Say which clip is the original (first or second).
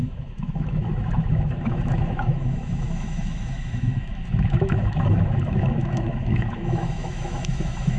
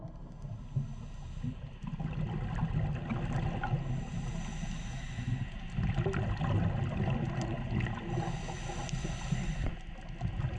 second